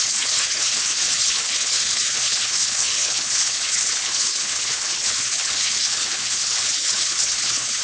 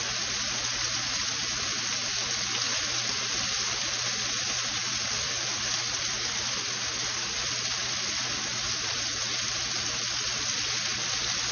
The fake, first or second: first